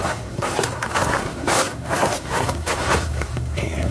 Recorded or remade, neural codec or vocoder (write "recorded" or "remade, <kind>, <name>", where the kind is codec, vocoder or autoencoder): remade, codec, SNAC